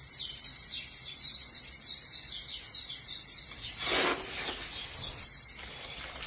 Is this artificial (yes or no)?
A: no